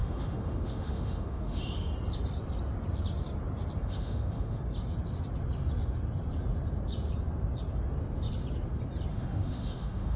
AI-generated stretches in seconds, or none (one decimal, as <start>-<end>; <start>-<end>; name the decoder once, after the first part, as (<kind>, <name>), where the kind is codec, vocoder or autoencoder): 0.0-1.9 (autoencoder, DAC-VAE); 3.8-4.6; 9.1-10.2